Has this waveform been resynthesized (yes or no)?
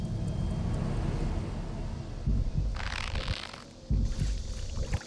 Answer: no